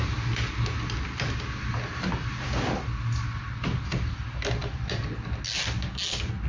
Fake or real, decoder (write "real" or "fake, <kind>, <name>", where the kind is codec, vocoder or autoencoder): real